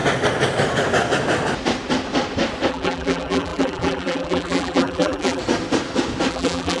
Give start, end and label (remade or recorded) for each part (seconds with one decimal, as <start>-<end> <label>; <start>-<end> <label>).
0.0-2.7 recorded; 2.7-5.4 remade; 5.4-6.3 recorded; 6.3-6.8 remade